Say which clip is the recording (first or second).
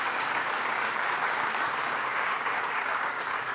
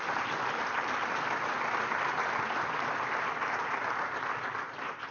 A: second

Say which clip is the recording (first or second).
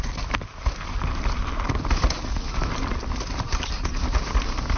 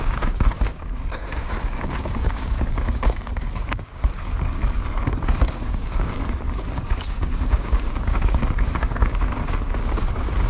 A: first